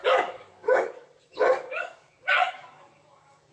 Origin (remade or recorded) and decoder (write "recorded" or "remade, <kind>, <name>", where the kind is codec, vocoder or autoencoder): remade, codec, DAC